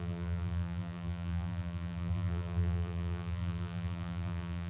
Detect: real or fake fake